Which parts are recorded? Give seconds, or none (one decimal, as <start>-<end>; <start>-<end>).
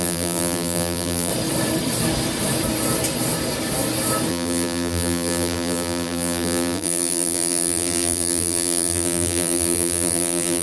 1.3-4.3